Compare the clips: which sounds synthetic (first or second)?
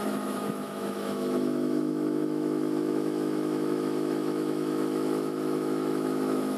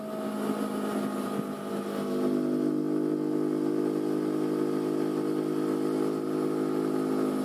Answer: first